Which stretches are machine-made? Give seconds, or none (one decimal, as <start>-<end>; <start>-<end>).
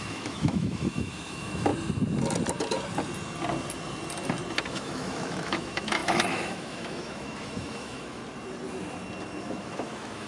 0.0-1.7; 4.7-8.2; 9.4-10.3